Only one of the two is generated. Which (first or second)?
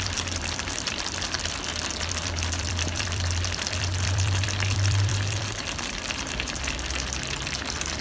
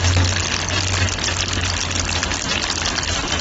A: first